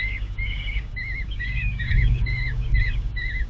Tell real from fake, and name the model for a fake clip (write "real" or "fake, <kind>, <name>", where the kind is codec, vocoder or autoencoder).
fake, codec, DAC